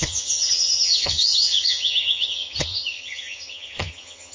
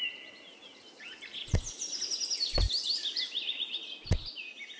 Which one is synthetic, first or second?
first